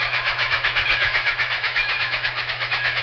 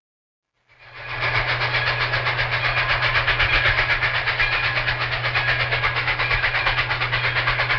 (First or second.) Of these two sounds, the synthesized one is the first